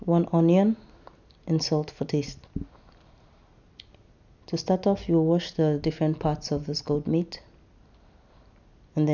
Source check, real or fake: real